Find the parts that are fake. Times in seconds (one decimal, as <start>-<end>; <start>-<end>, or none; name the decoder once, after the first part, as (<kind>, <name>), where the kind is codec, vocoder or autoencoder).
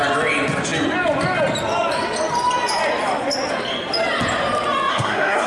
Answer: 4.9-5.5 (codec, SNAC)